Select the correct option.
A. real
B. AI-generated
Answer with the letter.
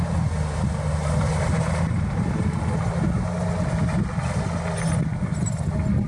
A